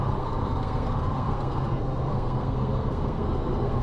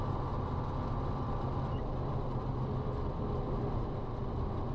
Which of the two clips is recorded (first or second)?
second